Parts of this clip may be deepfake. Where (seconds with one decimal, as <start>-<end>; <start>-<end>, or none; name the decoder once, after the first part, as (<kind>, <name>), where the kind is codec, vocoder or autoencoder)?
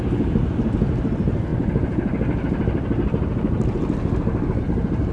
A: none